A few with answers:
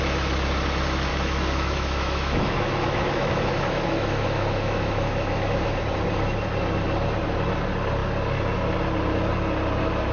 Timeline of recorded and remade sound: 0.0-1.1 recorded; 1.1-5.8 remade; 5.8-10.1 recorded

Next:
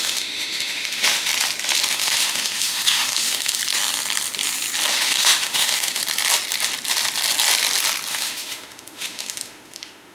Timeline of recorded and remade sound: 0.0-1.3 remade; 1.3-1.9 recorded; 1.9-3.6 remade; 3.6-4.9 recorded; 4.9-6.0 remade; 6.0-8.1 recorded; 8.1-10.1 remade

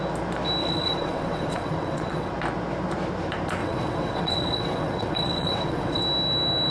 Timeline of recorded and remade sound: 0.0-0.6 recorded; 0.6-2.3 remade; 2.3-3.6 recorded; 3.6-6.0 remade; 6.0-6.7 recorded

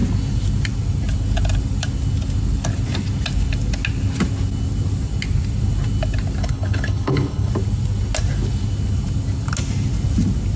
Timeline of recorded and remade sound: 0.0-6.4 recorded; 6.4-7.5 remade; 7.5-10.6 recorded

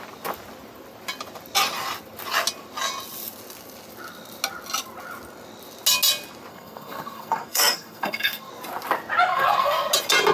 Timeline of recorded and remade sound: 0.0-6.5 recorded; 6.5-8.5 remade; 8.5-9.3 recorded; 9.3-9.9 remade; 9.9-10.3 recorded

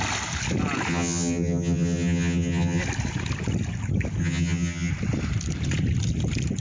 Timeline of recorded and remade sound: 0.0-0.9 recorded; 0.9-2.8 remade; 2.8-4.2 recorded; 4.2-4.9 remade; 4.9-6.6 recorded

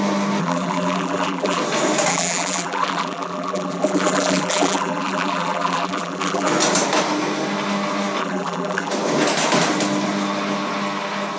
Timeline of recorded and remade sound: 0.0-0.4 recorded; 0.4-1.6 remade; 1.6-2.1 recorded; 2.1-6.5 remade; 6.5-8.2 recorded; 8.2-8.9 remade; 8.9-11.4 recorded